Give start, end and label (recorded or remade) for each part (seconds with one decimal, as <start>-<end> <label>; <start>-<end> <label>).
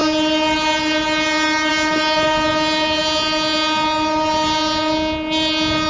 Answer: 0.0-5.9 recorded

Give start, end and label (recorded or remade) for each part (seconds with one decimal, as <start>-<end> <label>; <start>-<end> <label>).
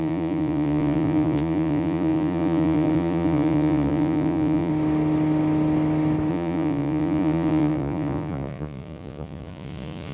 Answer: 0.0-4.7 remade; 4.7-6.3 recorded; 6.3-10.1 remade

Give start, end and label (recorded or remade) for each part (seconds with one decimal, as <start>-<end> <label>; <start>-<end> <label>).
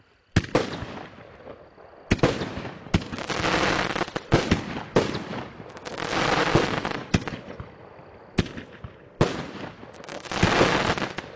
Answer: 0.0-11.4 recorded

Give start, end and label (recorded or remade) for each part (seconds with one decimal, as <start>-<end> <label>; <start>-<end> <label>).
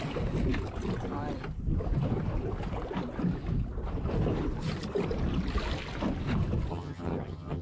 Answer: 0.0-6.7 recorded; 6.7-7.6 remade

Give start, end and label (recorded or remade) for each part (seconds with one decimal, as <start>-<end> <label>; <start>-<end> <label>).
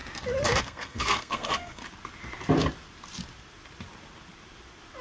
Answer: 0.0-0.6 recorded; 0.6-1.8 remade; 1.8-5.0 recorded